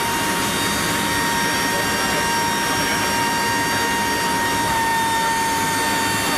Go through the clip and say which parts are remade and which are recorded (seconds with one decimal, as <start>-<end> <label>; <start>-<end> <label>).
0.0-6.4 recorded